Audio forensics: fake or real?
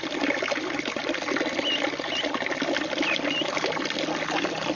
real